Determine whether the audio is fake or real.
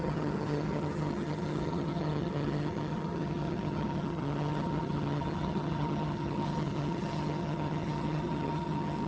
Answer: fake